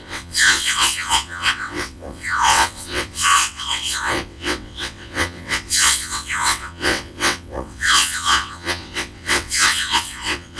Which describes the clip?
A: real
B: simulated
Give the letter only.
B